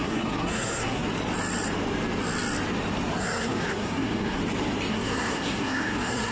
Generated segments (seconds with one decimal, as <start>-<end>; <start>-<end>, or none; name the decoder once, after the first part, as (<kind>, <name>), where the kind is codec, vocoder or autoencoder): 0.0-1.0 (codec, SNAC); 3.2-4.4; 4.9-6.3